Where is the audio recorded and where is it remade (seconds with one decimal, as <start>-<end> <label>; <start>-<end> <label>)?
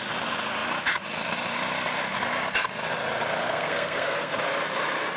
0.0-3.4 recorded; 3.4-4.4 remade; 4.4-5.2 recorded